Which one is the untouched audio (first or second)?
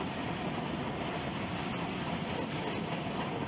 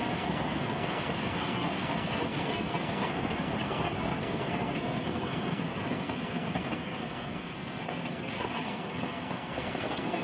first